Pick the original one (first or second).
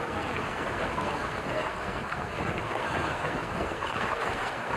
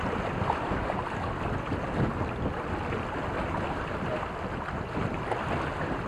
second